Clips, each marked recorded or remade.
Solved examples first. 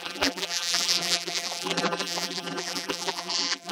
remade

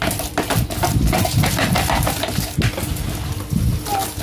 recorded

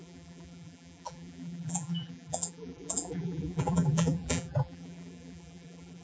remade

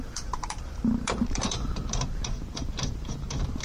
remade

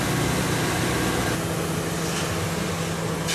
recorded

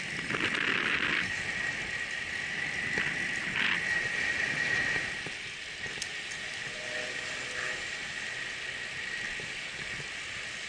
recorded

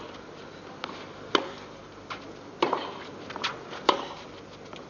recorded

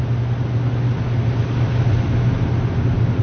recorded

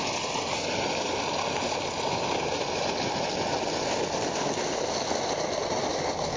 recorded